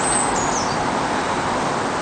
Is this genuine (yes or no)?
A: yes